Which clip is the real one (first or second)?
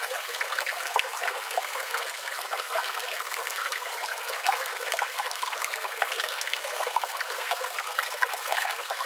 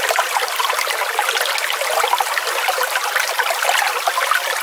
second